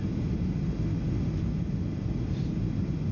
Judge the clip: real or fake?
real